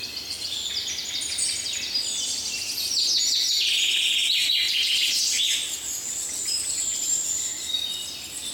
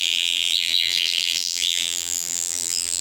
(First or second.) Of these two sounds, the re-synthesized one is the second